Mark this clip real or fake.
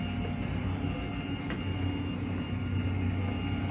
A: real